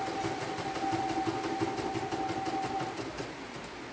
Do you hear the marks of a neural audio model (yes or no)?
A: no